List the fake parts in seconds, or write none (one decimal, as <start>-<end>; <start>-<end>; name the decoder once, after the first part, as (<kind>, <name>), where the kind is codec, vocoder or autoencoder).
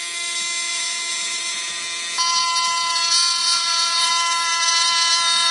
0.7-1.8 (vocoder, Vocos); 3.4-4.1